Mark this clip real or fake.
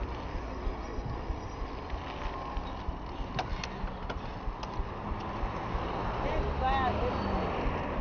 real